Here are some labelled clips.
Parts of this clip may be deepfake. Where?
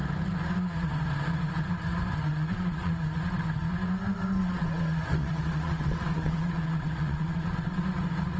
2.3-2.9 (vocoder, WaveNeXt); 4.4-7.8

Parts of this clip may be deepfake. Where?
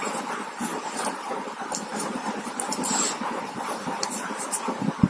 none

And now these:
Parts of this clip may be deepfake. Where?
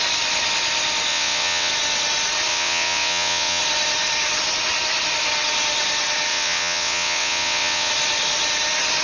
1.1-1.7 (vocoder, WaveNeXt); 2.5-3.6; 6.3-7.9